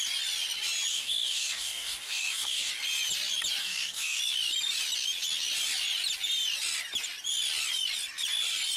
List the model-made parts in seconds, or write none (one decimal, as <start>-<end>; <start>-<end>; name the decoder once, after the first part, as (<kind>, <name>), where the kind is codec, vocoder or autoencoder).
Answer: 0.9-2.7 (codec, DAC); 3.6-4.2